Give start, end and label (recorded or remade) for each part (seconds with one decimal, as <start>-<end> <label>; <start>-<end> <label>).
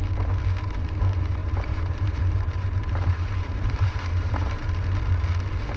0.0-1.4 recorded; 1.4-4.7 remade; 4.7-5.8 recorded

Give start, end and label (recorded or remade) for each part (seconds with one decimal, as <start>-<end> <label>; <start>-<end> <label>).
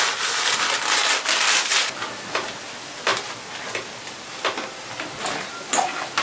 0.0-1.0 recorded; 1.0-1.7 remade; 1.7-3.1 recorded; 3.1-5.2 remade; 5.2-6.2 recorded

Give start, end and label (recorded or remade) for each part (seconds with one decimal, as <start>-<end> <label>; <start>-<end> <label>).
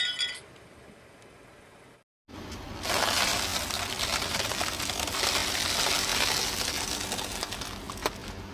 0.0-8.5 recorded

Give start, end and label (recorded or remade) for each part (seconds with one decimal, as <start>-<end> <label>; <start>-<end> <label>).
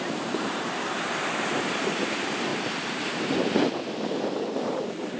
0.0-2.5 remade; 2.5-4.5 recorded; 4.5-5.2 remade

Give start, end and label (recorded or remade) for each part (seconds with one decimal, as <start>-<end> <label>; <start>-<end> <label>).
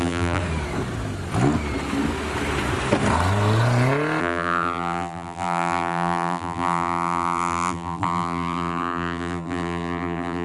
0.0-0.4 remade; 0.4-4.2 recorded; 4.2-10.4 remade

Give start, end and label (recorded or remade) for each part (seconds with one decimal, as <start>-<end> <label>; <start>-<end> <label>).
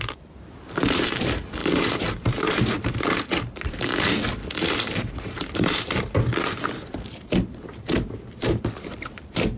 0.0-3.9 remade; 3.9-5.0 recorded; 5.0-9.6 remade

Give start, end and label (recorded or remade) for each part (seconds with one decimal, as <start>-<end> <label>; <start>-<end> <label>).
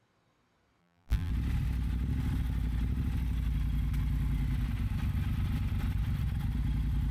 0.0-0.8 recorded; 0.8-1.3 remade; 1.3-7.1 recorded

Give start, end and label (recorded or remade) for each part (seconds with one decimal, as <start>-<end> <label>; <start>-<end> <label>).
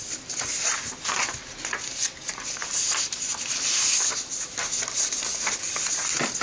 0.0-5.3 remade; 5.3-5.9 recorded; 5.9-6.4 remade